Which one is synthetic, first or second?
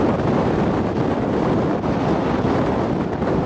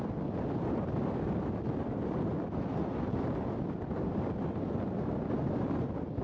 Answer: second